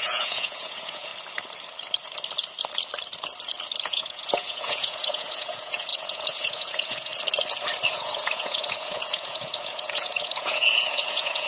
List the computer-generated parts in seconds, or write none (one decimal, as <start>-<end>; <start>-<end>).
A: 0.0-1.1; 3.8-7.1; 7.9-11.5